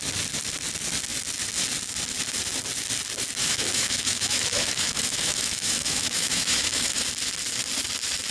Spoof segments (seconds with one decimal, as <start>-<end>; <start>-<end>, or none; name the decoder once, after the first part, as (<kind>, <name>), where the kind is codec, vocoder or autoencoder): 3.4-7.0 (autoencoder, DAC-VAE)